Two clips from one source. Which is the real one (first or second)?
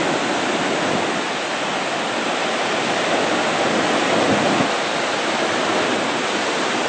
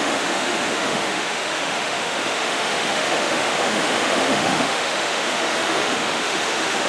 first